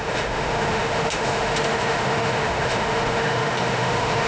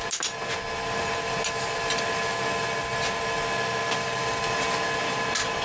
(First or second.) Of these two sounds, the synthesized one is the first